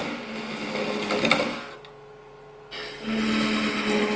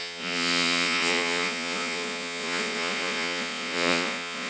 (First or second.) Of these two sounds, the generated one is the second